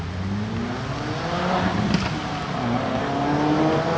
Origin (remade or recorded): recorded